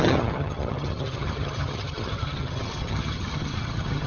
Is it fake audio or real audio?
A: fake